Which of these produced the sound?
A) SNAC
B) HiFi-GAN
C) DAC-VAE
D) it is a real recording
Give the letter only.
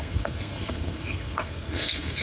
A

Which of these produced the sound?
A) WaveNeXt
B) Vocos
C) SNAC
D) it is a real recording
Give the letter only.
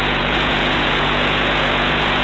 B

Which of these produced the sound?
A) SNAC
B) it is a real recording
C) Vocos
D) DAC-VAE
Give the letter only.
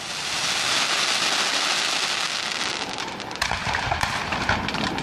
B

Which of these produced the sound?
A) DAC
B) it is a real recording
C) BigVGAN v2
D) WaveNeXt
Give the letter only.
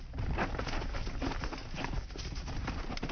B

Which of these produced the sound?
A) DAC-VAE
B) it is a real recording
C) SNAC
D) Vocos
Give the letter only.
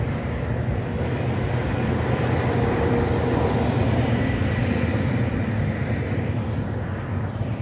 B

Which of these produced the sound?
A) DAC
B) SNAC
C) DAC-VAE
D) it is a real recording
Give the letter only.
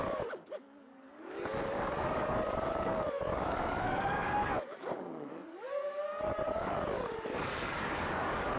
A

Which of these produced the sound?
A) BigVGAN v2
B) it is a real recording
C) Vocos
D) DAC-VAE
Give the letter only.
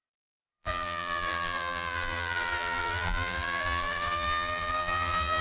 A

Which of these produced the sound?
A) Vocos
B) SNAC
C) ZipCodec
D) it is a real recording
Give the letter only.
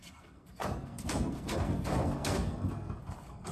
B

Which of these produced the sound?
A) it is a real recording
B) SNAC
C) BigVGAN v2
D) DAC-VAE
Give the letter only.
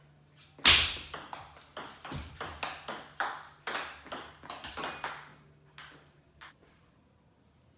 A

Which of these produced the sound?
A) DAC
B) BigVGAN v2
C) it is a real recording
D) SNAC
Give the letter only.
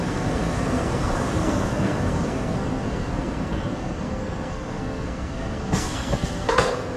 D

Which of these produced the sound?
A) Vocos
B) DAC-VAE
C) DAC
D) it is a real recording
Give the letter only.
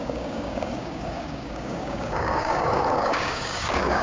C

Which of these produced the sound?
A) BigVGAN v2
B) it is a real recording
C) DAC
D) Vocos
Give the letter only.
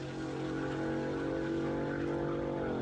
B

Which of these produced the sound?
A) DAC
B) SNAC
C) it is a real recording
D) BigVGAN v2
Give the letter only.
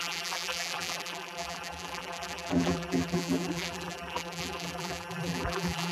D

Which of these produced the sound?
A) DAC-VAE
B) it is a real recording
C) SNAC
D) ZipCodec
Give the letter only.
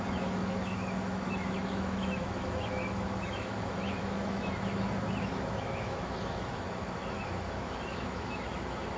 A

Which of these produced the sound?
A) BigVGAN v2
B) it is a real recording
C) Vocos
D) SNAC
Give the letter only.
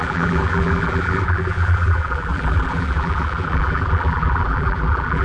A